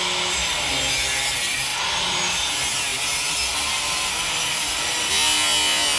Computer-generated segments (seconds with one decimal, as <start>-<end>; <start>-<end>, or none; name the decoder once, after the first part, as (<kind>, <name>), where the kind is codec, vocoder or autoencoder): none